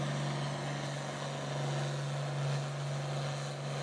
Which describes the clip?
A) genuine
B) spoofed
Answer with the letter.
A